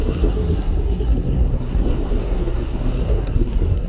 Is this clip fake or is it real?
fake